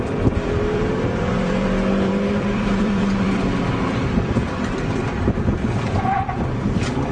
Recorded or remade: remade